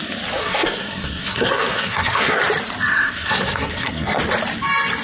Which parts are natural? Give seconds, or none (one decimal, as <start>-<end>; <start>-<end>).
0.0-0.4; 2.4-2.9; 4.2-5.0